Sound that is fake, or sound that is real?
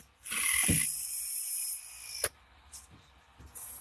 real